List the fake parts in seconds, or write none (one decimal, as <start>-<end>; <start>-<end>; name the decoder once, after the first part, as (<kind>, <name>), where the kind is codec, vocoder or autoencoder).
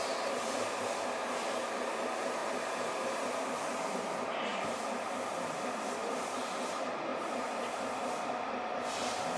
2.4-3.6 (vocoder, BigVGAN v2); 4.5-6.4; 7.1-8.0